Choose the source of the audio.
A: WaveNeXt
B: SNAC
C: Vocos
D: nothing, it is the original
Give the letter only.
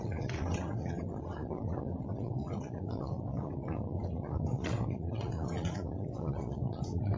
A